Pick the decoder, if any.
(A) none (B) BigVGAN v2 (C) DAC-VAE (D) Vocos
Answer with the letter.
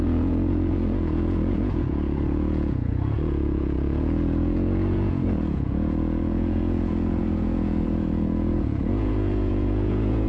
D